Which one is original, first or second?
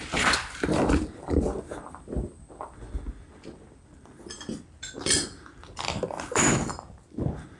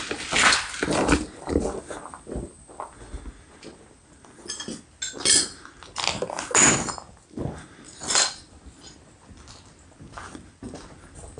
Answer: second